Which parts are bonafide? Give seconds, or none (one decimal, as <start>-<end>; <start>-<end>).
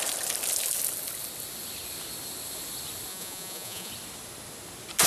0.0-3.1; 3.9-5.1